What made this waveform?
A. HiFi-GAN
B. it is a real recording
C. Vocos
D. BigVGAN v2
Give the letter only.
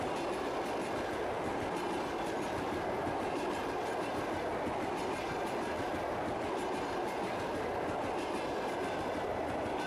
B